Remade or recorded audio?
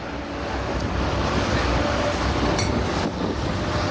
recorded